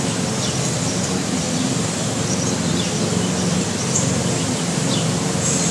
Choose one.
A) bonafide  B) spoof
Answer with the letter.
B